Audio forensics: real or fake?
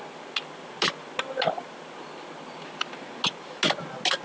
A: real